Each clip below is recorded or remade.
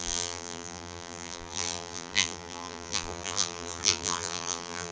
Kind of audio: remade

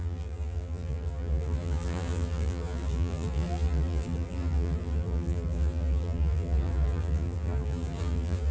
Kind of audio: remade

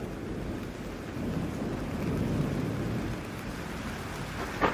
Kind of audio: recorded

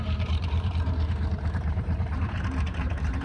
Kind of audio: remade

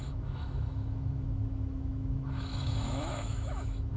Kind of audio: remade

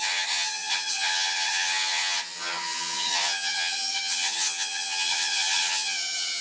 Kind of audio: remade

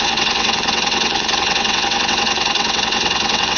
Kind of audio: remade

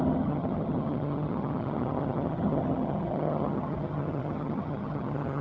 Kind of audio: remade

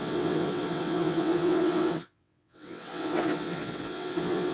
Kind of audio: remade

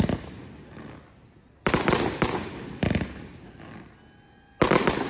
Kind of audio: recorded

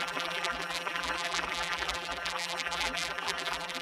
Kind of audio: remade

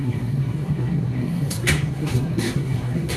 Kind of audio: remade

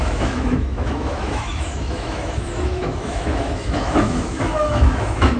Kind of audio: remade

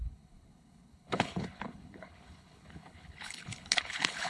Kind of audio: remade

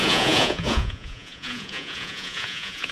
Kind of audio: remade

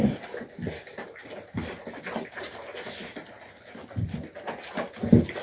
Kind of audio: recorded